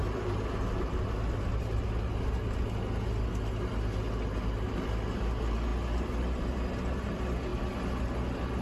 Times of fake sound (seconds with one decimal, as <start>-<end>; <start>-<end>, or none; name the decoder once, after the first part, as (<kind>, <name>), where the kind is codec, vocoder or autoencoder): none